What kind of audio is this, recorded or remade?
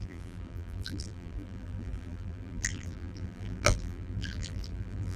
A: remade